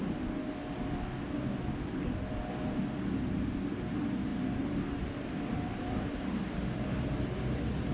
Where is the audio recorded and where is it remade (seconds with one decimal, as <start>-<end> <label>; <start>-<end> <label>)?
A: 0.0-4.3 recorded; 4.3-7.9 remade